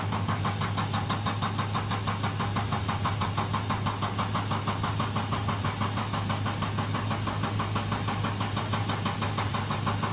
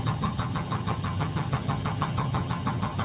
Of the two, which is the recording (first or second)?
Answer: first